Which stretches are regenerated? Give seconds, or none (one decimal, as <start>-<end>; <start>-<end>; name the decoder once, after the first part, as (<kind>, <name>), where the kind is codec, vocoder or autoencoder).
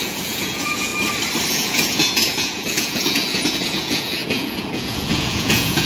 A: 0.0-0.9 (vocoder, Vocos); 1.5-5.9